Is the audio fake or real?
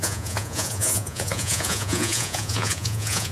fake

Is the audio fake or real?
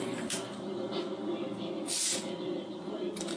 real